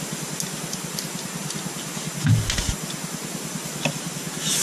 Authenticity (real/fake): real